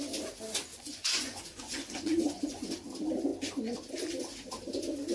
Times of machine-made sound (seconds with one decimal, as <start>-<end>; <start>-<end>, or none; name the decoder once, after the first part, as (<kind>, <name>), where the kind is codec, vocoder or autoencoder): 0.7-2.7 (vocoder, Vocos)